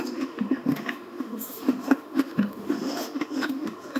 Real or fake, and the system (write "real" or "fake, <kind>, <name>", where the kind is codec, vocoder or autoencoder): fake, autoencoder, DAC-VAE